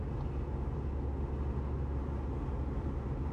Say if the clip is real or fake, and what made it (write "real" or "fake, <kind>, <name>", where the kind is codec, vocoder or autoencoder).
real